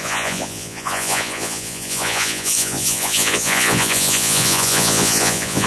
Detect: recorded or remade remade